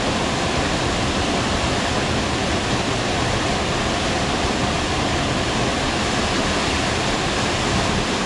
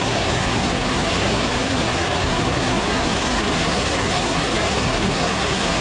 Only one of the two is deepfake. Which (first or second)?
second